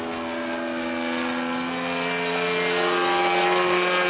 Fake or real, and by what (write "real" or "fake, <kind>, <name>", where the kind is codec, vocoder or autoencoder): real